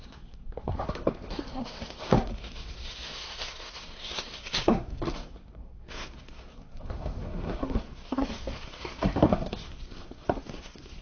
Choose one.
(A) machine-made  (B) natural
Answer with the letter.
A